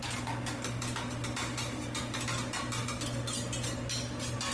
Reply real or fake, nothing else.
real